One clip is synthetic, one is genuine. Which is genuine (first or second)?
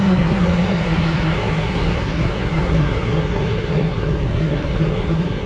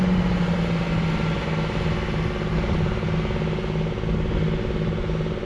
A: second